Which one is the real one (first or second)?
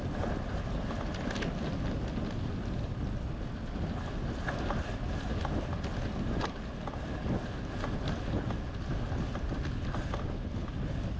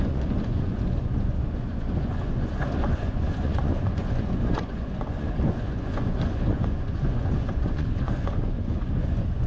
first